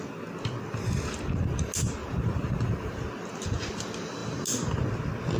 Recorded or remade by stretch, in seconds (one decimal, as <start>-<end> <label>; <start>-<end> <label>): 0.0-2.0 recorded; 2.0-3.0 remade; 3.0-5.4 recorded